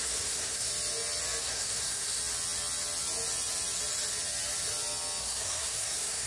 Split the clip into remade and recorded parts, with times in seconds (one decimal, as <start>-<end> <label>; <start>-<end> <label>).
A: 0.0-0.7 remade; 0.7-1.4 recorded; 1.4-2.2 remade; 2.2-5.2 recorded; 5.2-6.3 remade